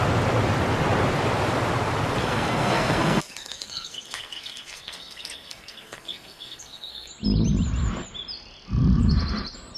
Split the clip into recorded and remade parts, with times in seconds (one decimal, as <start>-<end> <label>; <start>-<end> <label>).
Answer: 0.0-2.2 recorded; 2.2-7.1 remade; 7.1-9.8 recorded